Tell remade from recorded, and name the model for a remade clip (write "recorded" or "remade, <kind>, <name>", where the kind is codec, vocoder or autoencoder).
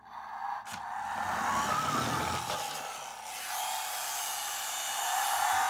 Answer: recorded